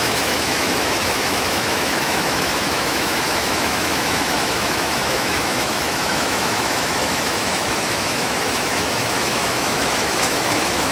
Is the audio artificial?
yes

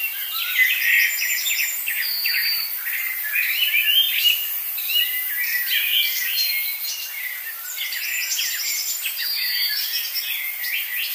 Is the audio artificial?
no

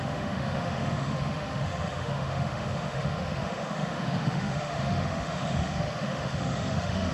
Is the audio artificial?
yes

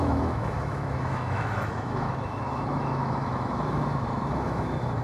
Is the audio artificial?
yes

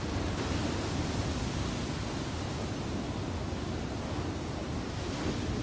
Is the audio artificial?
no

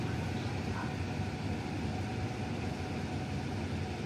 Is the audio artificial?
no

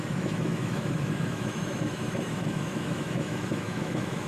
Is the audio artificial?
yes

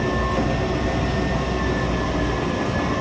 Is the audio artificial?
no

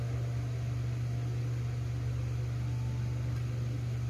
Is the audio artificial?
no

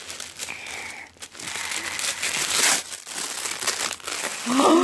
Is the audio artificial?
no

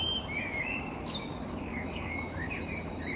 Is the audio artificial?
yes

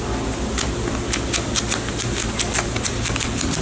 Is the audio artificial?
no